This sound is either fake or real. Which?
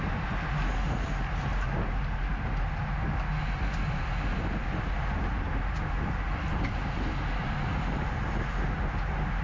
real